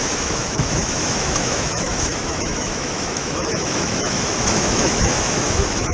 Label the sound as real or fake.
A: fake